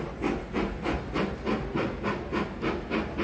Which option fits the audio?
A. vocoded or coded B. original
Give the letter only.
B